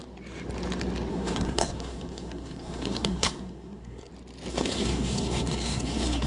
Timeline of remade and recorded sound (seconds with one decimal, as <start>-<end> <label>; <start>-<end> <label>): 0.0-1.1 recorded; 1.1-4.1 remade; 4.1-4.5 recorded; 4.5-6.3 remade